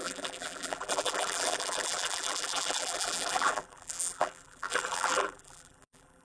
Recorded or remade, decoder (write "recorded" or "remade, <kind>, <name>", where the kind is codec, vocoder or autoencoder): remade, vocoder, BigVGAN v2